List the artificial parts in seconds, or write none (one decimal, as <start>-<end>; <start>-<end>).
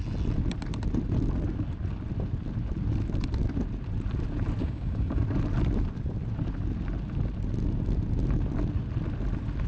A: 4.6-5.2